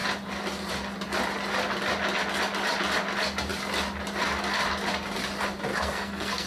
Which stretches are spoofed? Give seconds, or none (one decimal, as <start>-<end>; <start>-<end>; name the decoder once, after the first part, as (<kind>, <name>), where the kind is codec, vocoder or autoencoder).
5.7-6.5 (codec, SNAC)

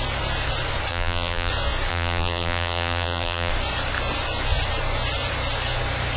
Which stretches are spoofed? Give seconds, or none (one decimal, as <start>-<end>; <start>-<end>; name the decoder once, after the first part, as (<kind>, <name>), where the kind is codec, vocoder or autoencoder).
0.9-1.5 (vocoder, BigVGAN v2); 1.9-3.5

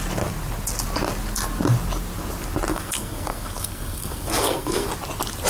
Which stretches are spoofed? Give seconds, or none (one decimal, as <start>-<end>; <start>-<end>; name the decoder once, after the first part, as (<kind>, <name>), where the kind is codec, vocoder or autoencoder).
2.7-4.9 (codec, SNAC)

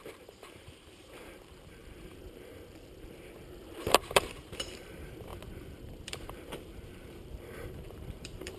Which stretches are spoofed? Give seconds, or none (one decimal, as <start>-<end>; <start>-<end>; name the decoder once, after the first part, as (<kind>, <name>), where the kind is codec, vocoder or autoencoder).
0.0-1.8 (vocoder, BigVGAN v2); 3.9-5.3; 6.0-8.6

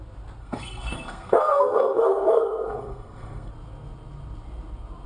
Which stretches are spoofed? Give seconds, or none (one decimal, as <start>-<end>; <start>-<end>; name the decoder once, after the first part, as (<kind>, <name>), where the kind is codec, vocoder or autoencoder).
0.4-3.5 (codec, SNAC)

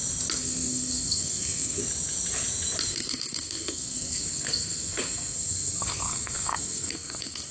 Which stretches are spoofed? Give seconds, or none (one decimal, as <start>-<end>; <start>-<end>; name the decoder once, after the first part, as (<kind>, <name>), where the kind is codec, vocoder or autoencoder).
0.4-1.8 (codec, SNAC); 2.9-7.5

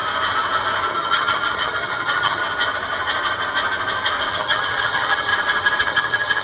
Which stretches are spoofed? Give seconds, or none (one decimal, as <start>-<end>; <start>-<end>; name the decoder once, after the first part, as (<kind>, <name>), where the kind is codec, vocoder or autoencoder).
0.9-2.4 (vocoder, HiFi-GAN); 4.3-5.3; 5.8-6.4

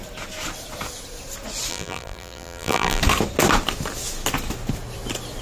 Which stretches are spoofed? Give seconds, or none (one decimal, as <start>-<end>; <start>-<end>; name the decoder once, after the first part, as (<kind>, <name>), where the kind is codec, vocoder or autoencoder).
1.7-3.0 (vocoder, BigVGAN v2)